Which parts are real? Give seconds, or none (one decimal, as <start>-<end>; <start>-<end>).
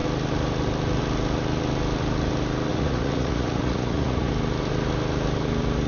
0.0-2.7; 4.3-5.9